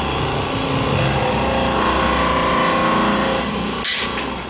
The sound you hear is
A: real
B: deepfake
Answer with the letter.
A